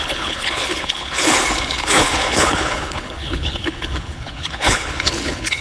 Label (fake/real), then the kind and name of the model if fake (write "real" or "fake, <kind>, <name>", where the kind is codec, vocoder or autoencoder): fake, codec, HILCodec